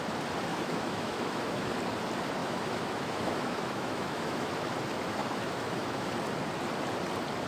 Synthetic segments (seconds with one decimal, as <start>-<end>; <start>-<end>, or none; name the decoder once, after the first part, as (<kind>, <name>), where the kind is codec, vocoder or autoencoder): 0.5-1.7 (autoencoder, DAC-VAE); 2.4-4.5; 5.2-6.1